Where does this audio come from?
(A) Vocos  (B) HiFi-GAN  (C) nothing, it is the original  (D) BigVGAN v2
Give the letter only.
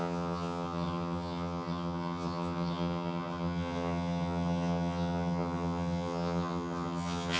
B